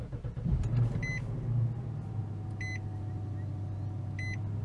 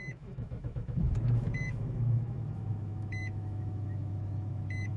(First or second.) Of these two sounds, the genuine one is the first